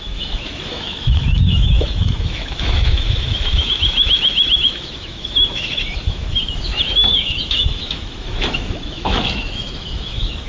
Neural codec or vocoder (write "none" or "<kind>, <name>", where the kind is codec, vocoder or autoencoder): autoencoder, DAC-VAE